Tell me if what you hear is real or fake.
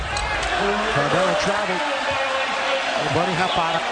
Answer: real